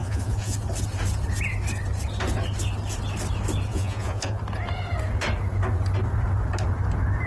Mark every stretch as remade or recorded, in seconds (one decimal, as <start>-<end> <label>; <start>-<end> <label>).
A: 0.0-0.6 remade; 0.6-3.7 recorded; 3.7-4.4 remade; 4.4-7.3 recorded